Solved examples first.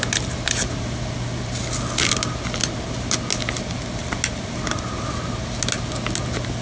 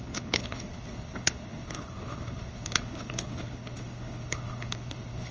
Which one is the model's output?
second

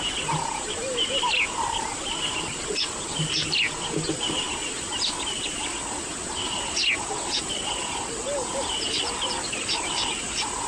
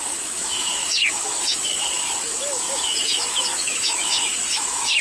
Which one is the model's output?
second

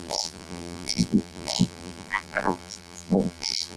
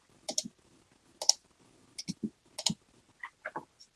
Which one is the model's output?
first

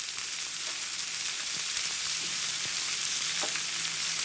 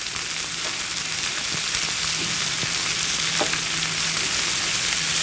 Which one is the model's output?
first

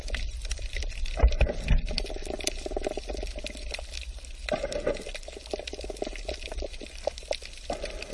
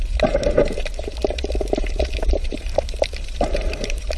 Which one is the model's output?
second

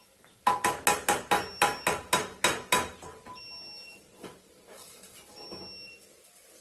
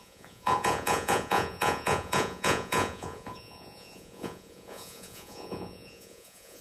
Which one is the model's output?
second